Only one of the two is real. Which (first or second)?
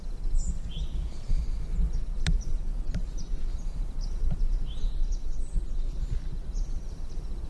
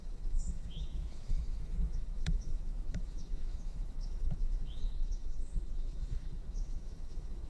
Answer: first